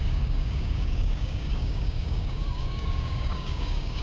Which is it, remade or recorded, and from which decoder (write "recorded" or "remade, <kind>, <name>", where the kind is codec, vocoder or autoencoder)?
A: remade, codec, DAC